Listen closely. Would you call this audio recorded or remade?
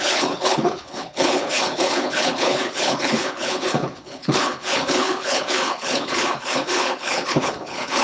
remade